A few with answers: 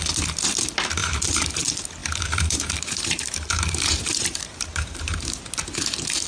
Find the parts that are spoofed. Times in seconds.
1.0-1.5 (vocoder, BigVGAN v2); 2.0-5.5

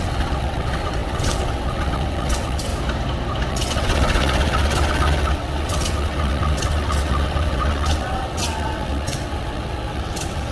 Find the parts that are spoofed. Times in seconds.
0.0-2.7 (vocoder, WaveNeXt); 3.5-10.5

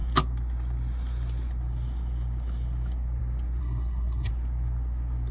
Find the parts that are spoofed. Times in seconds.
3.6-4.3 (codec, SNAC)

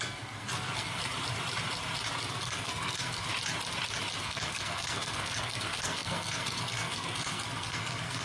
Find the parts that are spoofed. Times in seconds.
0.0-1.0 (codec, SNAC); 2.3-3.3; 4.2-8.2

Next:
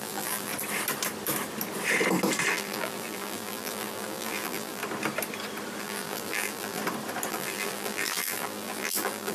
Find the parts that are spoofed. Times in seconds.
0.0-0.5 (vocoder, BigVGAN v2); 2.5-4.8; 5.8-6.8; 7.3-9.3

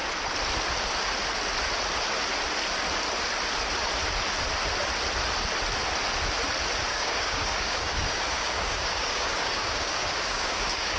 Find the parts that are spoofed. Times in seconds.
6.9-11.0 (codec, DAC)